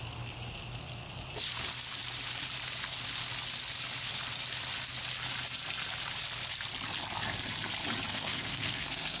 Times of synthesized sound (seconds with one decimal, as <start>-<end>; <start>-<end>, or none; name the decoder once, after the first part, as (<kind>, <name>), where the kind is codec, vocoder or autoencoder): 8.1-9.2 (codec, SNAC)